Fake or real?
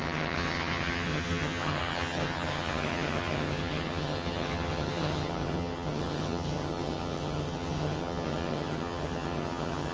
fake